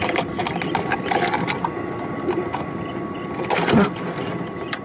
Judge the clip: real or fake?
real